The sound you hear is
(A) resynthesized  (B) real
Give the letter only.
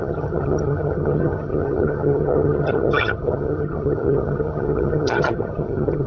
A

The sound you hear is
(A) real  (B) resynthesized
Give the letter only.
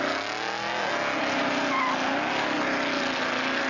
A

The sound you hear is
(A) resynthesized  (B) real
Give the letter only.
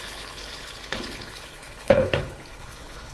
A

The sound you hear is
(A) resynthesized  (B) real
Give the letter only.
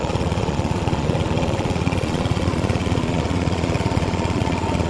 A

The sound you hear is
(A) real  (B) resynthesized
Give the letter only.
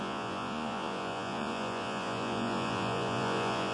B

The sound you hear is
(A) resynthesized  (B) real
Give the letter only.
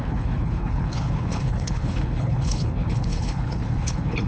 A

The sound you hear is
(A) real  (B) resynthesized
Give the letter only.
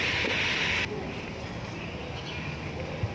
A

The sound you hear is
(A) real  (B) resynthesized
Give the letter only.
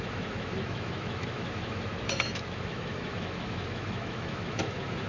B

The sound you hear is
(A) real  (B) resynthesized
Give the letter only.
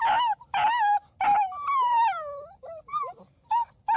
A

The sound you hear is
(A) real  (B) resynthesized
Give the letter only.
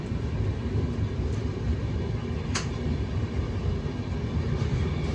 A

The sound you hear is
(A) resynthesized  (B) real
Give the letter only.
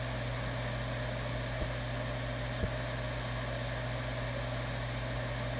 B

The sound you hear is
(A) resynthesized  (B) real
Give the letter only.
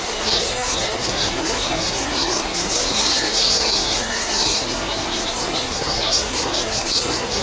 A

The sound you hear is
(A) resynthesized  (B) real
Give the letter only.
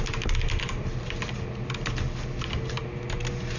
B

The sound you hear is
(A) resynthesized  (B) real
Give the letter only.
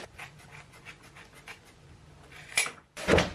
A